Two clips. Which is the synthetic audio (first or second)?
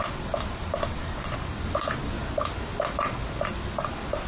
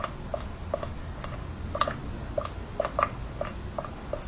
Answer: first